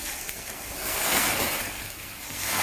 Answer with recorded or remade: remade